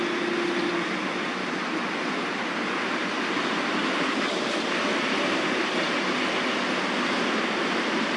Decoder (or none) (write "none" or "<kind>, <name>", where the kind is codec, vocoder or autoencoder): none